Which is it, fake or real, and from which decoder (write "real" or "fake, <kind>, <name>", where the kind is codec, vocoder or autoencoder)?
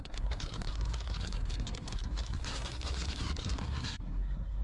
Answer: fake, codec, SNAC